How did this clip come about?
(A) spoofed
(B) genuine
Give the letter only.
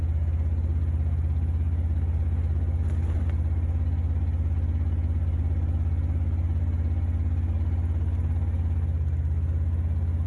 B